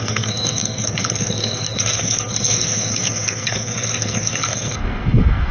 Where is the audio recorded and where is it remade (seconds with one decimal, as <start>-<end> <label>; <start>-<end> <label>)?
0.0-5.5 remade